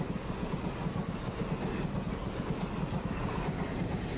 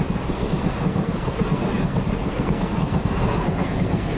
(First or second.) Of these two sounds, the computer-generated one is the second